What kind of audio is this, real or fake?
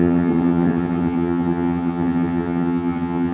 fake